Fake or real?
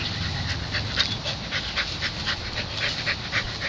real